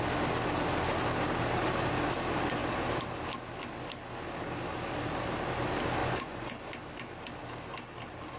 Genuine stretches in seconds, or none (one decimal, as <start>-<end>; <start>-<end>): 0.0-6.0; 6.6-8.4